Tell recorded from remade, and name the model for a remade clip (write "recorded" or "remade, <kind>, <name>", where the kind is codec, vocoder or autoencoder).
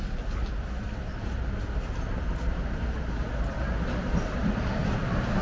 recorded